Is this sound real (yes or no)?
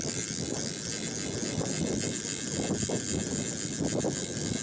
yes